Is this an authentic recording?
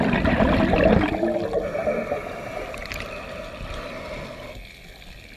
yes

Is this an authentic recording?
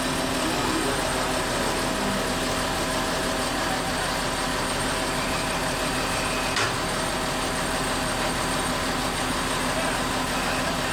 yes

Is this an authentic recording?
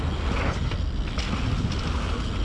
yes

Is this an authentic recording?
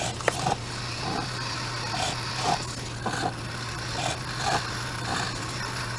yes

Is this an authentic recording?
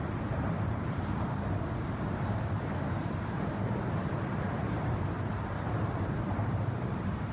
no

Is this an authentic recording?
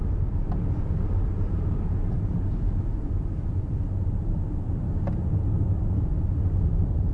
no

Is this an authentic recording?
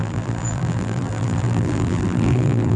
no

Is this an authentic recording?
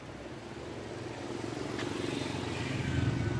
yes